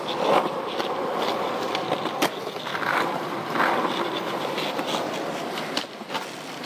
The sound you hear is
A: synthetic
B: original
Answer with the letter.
B